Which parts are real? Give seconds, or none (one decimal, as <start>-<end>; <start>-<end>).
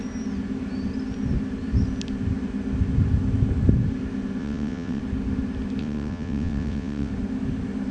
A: 0.0-4.4; 5.0-5.8; 7.1-7.9